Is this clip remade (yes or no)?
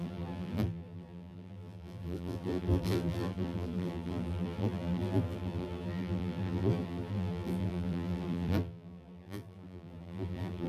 yes